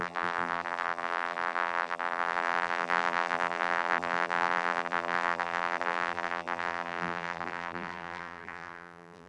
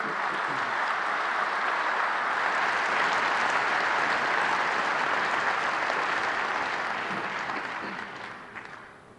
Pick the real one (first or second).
second